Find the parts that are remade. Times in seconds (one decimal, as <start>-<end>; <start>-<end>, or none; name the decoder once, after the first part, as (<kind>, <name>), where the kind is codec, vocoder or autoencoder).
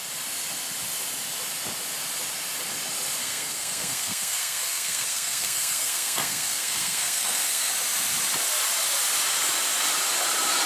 3.2-7.7 (codec, SNAC)